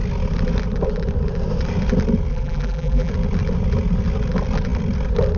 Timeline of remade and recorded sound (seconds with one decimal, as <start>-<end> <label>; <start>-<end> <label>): 0.0-2.3 recorded; 2.3-3.1 remade; 3.1-5.4 recorded